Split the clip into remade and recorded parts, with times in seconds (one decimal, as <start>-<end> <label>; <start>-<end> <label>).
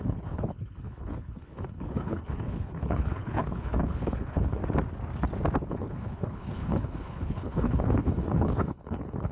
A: 0.0-4.6 remade; 4.6-5.7 recorded; 5.7-9.3 remade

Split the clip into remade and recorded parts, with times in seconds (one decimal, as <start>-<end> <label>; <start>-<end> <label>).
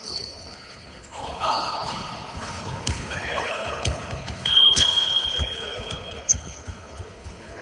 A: 0.0-7.6 remade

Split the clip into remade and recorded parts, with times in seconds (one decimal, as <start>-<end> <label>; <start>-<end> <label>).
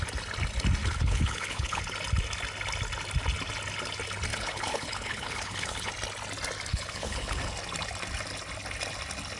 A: 0.0-0.8 recorded; 0.8-1.8 remade; 1.8-4.3 recorded; 4.3-5.9 remade; 5.9-6.7 recorded; 6.7-7.5 remade; 7.5-9.4 recorded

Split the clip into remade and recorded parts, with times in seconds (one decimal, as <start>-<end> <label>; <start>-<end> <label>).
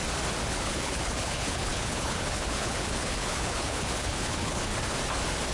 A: 0.0-0.5 recorded; 0.5-4.7 remade; 4.7-5.5 recorded